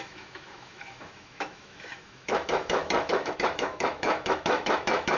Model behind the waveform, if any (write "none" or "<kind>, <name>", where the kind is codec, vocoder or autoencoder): autoencoder, DAC-VAE